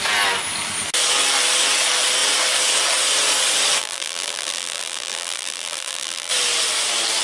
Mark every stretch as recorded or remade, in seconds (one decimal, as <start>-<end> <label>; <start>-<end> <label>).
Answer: 0.0-3.8 recorded; 3.8-6.3 remade; 6.3-7.2 recorded